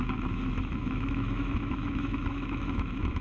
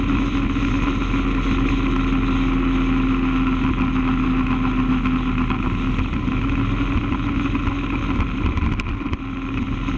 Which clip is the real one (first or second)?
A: second